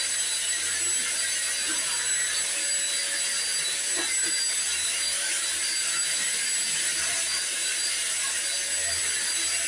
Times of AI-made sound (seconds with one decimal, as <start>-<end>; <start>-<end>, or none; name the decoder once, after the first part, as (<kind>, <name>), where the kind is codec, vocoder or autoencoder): 4.8-5.4 (autoencoder, DAC-VAE)